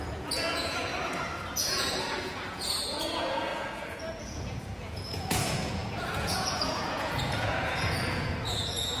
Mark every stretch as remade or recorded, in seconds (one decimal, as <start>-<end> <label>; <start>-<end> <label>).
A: 0.0-0.9 remade; 0.9-1.5 recorded; 1.5-9.0 remade